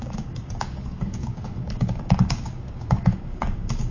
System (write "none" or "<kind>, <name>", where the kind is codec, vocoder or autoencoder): codec, DAC